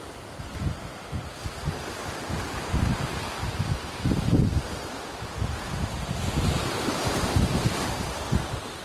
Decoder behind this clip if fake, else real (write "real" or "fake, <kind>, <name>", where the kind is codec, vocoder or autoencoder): real